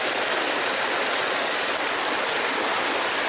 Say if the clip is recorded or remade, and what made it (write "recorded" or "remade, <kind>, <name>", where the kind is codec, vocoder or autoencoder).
recorded